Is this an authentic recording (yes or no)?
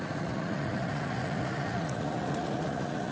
no